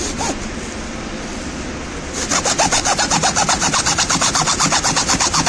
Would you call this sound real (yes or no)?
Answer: yes